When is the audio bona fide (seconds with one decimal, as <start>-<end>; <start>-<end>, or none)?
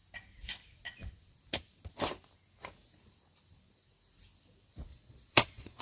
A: 0.0-4.9